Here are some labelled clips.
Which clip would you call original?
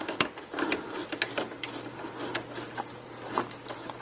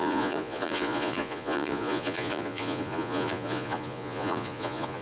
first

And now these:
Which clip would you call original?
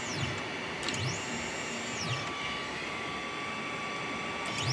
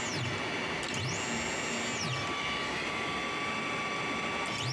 second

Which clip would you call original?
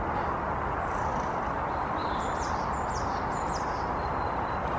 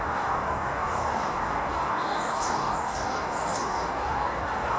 first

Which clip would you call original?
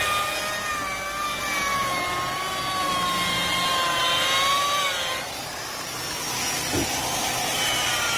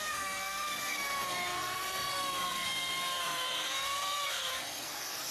first